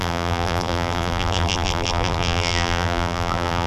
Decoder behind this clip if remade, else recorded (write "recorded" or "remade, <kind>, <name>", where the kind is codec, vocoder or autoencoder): remade, vocoder, BigVGAN v2